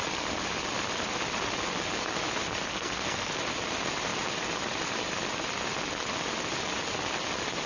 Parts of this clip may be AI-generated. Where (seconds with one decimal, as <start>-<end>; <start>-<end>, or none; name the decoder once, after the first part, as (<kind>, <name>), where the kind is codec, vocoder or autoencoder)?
2.7-3.4 (codec, SNAC)